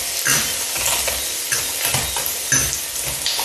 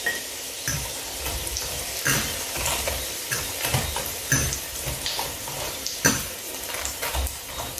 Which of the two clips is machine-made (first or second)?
second